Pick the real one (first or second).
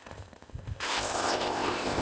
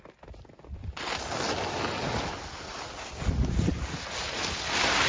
second